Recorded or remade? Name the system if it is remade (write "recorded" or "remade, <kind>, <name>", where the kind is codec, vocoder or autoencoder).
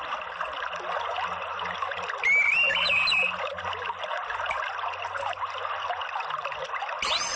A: recorded